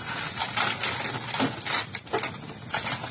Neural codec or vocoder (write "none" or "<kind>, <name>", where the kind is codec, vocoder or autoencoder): none